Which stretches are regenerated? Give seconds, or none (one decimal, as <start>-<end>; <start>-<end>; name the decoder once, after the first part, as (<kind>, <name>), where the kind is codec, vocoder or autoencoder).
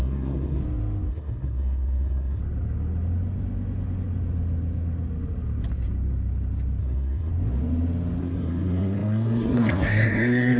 0.0-0.6 (codec, SNAC); 1.1-2.4; 6.8-7.3; 8.2-10.6